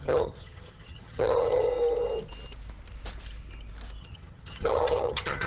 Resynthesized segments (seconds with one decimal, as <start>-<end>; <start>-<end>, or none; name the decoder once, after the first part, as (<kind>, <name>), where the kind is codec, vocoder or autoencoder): 0.0-1.7 (vocoder, HiFi-GAN); 4.0-5.5